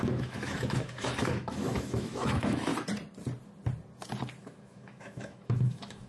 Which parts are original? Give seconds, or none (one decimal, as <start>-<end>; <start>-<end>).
2.7-4.4